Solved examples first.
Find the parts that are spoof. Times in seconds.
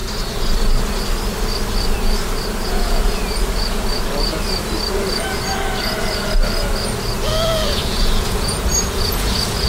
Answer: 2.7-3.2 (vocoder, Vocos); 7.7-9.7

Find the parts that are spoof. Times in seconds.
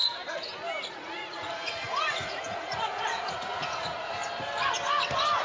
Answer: 0.9-4.2 (vocoder, Vocos)